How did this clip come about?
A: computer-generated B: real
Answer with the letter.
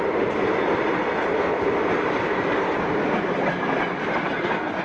B